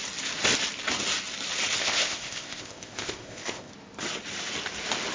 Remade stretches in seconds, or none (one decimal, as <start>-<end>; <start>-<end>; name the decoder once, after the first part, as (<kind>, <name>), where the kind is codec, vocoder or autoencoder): 1.8-3.7 (codec, ZipCodec)